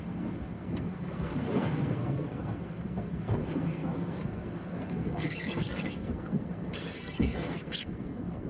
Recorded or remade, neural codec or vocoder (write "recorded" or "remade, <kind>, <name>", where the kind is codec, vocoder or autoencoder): remade, codec, SNAC